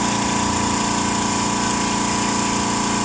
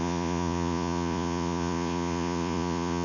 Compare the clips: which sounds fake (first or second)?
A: second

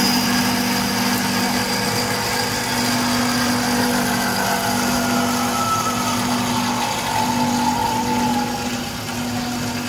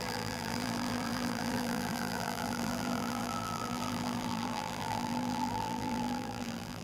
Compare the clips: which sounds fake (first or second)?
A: second